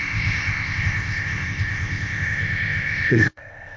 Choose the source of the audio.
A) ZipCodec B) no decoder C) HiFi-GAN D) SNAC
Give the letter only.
A